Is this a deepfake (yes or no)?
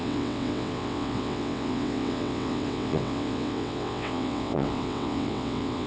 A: yes